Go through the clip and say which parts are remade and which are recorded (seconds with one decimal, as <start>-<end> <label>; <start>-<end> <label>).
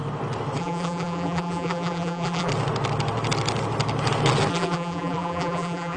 0.0-0.6 recorded; 0.6-2.5 remade; 2.5-4.5 recorded; 4.5-6.0 remade